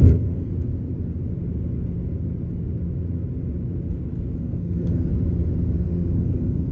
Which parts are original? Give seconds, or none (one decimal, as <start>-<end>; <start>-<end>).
0.5-4.4; 5.1-5.7